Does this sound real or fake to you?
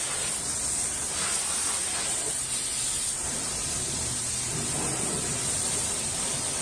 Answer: real